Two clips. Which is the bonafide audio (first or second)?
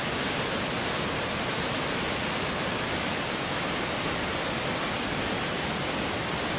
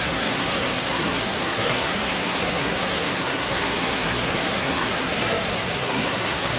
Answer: first